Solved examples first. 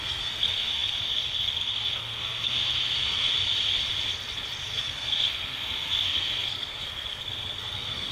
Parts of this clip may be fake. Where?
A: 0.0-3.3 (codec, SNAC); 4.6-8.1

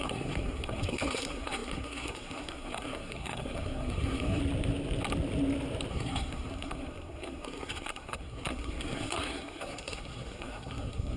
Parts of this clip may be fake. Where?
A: 0.0-4.4 (codec, SNAC); 5.9-11.2

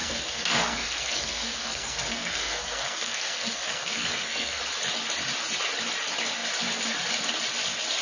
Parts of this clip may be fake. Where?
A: 0.0-4.6 (codec, SNAC)